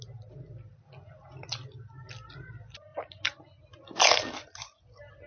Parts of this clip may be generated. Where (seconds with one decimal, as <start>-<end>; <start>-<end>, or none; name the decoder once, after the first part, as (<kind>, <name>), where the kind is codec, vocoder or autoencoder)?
none